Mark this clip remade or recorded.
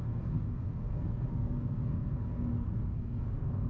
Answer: remade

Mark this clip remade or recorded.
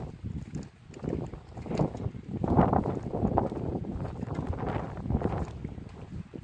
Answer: recorded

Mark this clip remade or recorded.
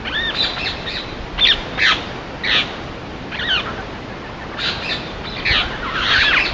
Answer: recorded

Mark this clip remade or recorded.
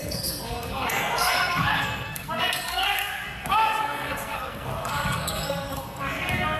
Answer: remade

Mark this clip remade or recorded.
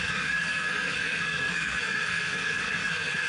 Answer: remade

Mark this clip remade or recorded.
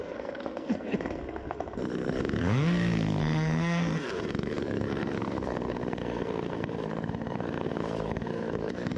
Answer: remade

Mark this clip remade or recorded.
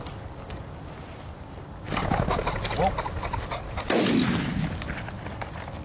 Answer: recorded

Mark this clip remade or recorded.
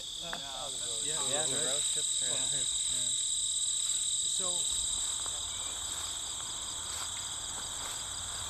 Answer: recorded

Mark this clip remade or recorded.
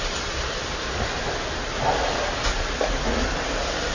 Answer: recorded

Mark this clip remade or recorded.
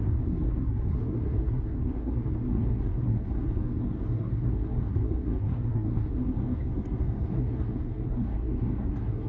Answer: remade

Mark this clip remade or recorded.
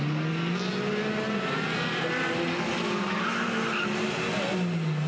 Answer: recorded